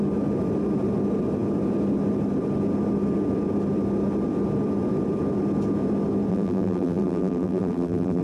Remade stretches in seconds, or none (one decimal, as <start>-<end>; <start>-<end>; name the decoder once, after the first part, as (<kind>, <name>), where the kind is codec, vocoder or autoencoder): 6.3-8.2 (vocoder, BigVGAN v2)